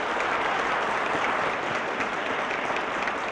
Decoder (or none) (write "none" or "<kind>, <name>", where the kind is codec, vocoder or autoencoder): none